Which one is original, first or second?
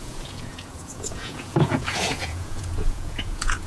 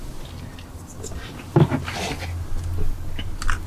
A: second